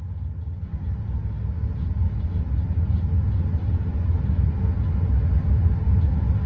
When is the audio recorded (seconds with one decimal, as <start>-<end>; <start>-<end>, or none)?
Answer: 0.0-6.5